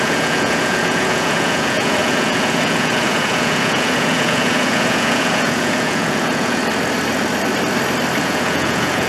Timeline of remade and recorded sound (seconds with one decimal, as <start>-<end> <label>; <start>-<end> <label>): 0.0-6.6 remade; 6.6-8.2 recorded; 8.2-9.1 remade